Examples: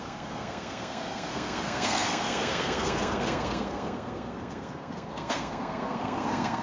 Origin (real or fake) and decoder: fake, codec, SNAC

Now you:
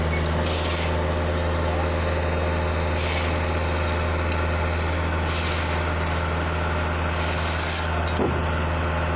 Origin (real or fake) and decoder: real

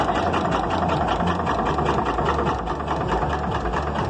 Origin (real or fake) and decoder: real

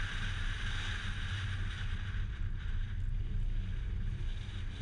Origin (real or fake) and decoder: real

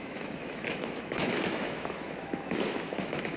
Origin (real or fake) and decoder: fake, autoencoder, DAC-VAE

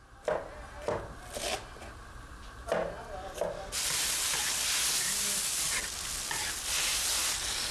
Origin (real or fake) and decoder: real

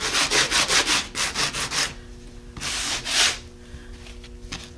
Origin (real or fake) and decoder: real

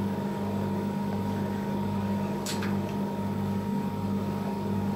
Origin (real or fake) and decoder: fake, codec, DAC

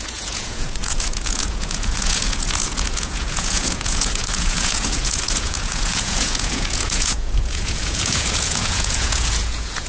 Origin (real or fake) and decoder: fake, vocoder, Vocos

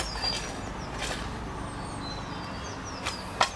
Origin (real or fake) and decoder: real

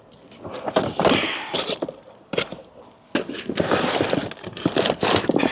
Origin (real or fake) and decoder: fake, vocoder, BigVGAN v2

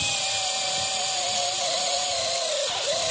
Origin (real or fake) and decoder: real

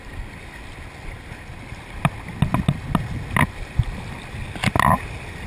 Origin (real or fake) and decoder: real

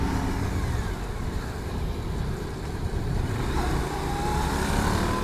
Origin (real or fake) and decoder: real